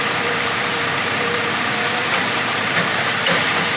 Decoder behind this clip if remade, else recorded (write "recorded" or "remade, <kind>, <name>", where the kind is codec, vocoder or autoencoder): remade, vocoder, BigVGAN v2